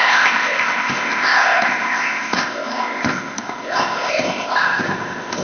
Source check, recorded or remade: remade